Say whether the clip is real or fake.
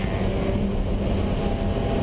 real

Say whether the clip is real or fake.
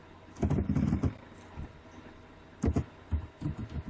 real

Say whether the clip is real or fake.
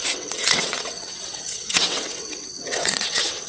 fake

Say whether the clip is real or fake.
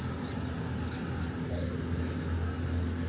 real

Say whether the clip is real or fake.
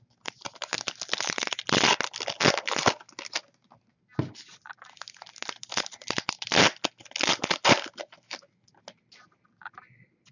real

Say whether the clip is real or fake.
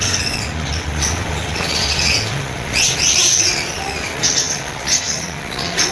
fake